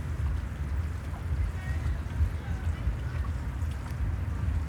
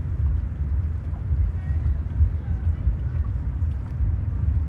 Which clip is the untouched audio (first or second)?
first